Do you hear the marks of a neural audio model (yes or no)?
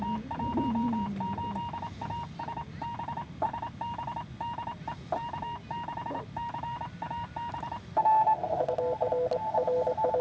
no